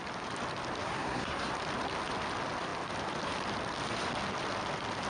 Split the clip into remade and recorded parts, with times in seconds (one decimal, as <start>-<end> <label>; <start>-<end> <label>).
0.0-0.8 recorded; 0.8-1.5 remade; 1.5-5.1 recorded